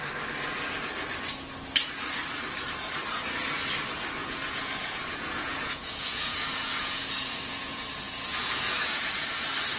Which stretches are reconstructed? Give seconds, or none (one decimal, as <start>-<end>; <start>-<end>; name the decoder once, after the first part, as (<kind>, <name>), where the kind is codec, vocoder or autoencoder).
4.2-9.1 (vocoder, Vocos)